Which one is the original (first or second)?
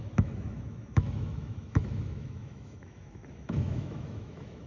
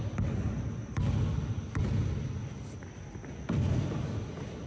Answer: second